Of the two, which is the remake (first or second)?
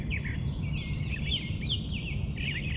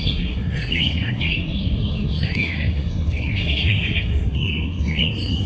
second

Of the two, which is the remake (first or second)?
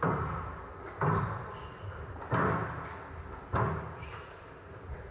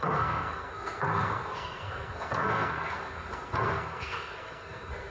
second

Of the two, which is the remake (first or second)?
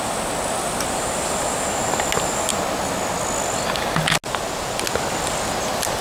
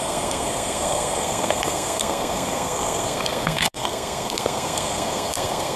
second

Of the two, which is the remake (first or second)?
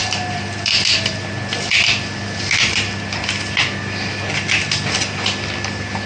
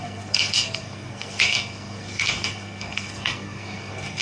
second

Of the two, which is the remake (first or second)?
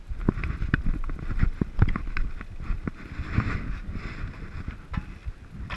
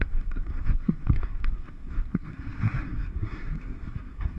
second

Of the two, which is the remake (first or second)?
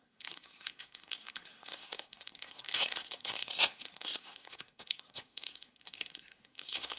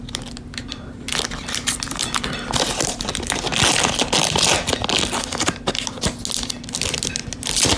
first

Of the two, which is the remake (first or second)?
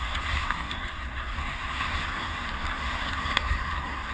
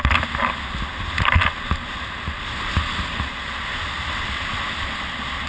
first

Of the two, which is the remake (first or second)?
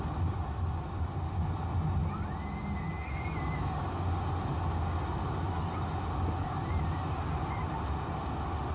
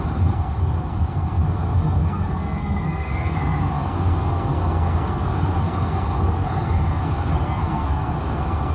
second